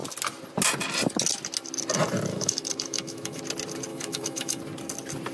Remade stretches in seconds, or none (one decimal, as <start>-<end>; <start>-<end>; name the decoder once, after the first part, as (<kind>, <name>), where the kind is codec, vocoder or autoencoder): 2.3-3.4 (autoencoder, DAC-VAE); 3.9-4.6